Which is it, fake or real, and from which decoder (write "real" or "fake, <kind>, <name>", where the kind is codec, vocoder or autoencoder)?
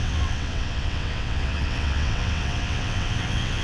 fake, vocoder, WaveNeXt